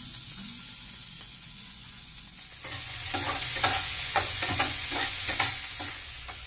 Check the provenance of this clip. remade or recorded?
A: remade